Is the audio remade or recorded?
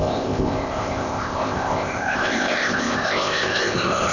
remade